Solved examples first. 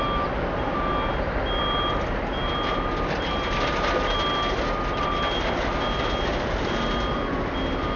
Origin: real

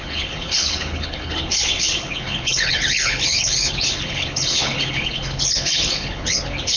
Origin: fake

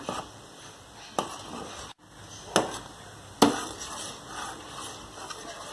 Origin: real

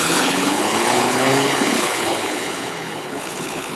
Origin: fake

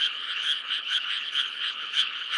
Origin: fake